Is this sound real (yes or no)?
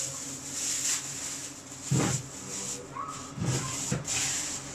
yes